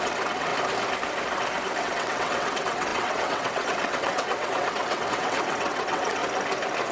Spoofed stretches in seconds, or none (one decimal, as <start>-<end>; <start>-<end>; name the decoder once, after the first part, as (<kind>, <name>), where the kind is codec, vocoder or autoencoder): 0.0-0.5 (vocoder, WaveNeXt); 1.8-6.2